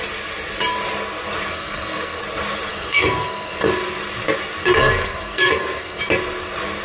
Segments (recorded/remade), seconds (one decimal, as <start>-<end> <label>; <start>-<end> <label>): 0.0-1.5 recorded; 1.5-2.2 remade; 2.2-2.7 recorded; 2.7-3.7 remade; 3.7-4.6 recorded; 4.6-6.0 remade; 6.0-6.8 recorded